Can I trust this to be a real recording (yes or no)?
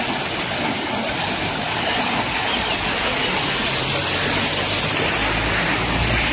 yes